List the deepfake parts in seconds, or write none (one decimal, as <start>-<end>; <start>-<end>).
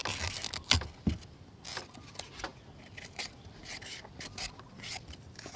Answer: none